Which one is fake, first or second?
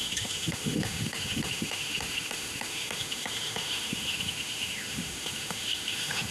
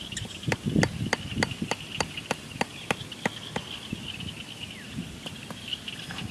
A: first